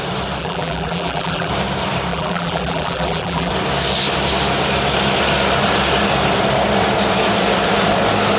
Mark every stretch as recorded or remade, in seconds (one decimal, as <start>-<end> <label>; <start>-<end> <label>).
0.0-0.4 recorded; 0.4-1.5 remade; 1.5-2.1 recorded; 2.1-3.5 remade; 3.5-8.4 recorded